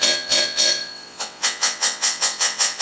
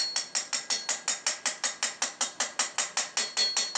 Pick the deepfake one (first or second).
first